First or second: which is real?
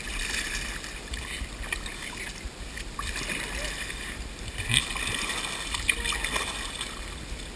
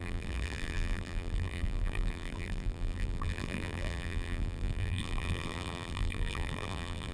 first